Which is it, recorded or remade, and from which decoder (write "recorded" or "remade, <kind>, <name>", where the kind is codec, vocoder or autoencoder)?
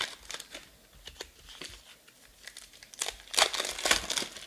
recorded